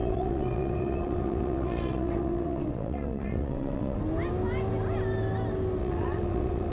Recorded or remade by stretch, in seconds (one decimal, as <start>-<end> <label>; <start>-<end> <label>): 0.0-4.0 remade; 4.0-5.8 recorded; 5.8-6.7 remade